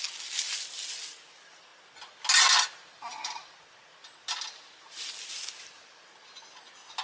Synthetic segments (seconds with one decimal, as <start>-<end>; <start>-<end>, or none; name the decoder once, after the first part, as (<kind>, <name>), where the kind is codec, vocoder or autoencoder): none